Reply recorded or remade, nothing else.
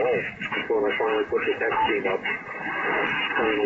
recorded